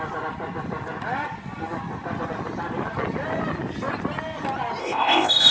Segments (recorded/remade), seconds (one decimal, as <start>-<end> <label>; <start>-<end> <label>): 0.0-4.8 recorded; 4.8-5.5 remade